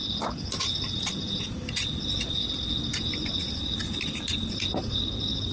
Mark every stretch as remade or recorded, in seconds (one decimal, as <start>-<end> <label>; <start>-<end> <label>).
0.0-5.5 recorded